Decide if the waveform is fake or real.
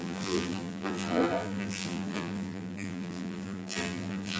fake